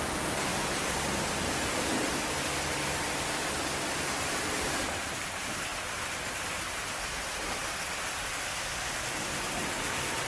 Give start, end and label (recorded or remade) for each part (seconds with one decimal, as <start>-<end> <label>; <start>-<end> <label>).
0.0-10.3 remade